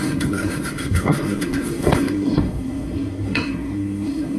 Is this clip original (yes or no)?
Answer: no